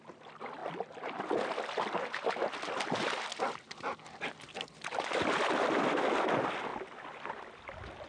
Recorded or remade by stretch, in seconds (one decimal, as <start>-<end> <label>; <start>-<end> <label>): 0.0-8.1 recorded